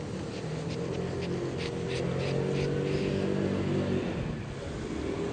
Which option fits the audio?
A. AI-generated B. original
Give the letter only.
B